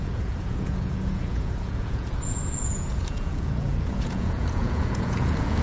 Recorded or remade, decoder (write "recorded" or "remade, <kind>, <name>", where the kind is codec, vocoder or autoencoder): remade, vocoder, Vocos